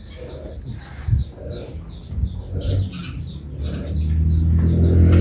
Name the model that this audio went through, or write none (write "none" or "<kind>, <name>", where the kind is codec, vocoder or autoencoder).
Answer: none